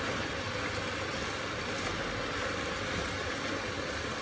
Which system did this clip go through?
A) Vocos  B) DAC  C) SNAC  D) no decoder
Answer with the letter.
D